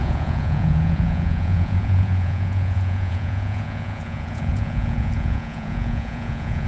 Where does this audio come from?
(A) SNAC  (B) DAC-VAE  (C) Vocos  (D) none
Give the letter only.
C